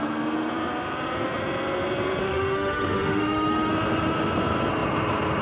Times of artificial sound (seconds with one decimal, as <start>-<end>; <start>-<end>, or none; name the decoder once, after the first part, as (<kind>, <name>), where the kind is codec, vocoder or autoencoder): 2.2-3.7 (autoencoder, DAC-VAE)